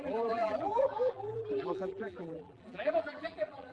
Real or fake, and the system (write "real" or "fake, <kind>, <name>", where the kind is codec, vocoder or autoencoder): fake, vocoder, BigVGAN v2